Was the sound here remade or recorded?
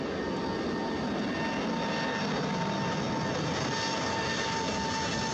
recorded